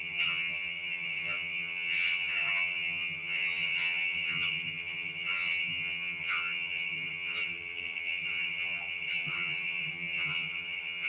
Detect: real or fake fake